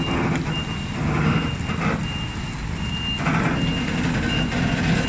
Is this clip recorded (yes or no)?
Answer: yes